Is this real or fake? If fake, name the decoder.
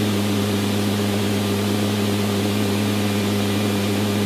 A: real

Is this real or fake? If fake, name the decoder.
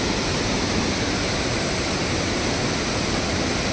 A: real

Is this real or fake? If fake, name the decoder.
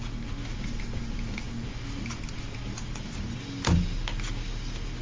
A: real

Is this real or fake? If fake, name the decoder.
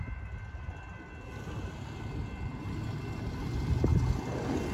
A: real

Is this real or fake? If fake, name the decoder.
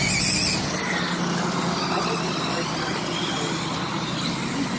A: real